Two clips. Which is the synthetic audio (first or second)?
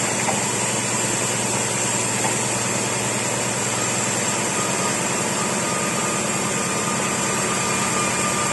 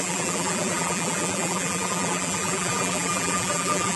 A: second